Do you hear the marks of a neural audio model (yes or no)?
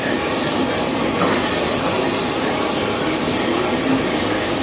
no